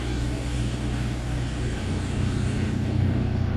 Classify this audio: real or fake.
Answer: fake